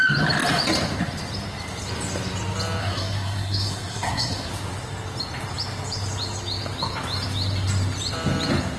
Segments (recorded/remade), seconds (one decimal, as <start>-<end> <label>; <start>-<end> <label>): 0.0-2.8 recorded; 2.8-4.5 remade; 4.5-8.8 recorded